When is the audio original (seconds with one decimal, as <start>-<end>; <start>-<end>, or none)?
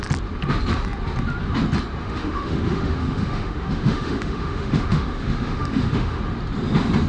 0.0-2.0; 6.2-7.1